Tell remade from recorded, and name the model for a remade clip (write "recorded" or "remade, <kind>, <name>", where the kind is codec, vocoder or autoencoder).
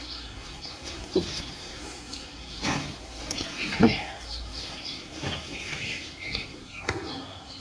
remade, codec, SNAC